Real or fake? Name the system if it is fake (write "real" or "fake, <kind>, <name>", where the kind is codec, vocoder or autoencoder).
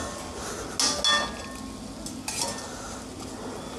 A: real